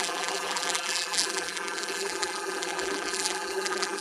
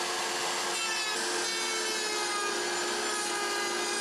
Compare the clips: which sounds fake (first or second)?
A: first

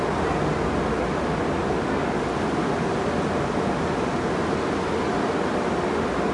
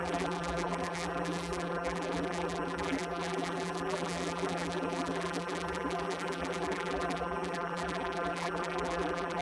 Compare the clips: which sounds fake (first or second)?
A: second